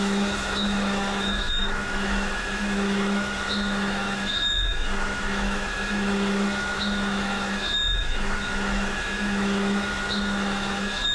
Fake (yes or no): yes